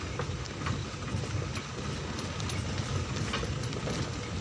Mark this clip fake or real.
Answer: real